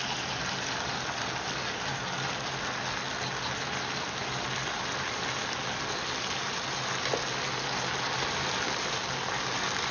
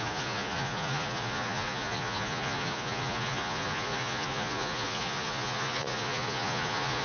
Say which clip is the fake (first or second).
second